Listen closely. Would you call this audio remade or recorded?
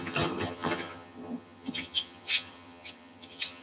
remade